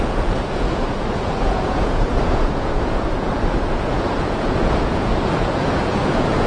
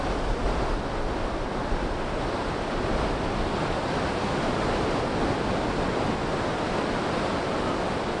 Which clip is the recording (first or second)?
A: second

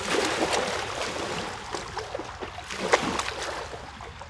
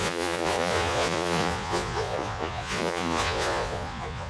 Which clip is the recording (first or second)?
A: first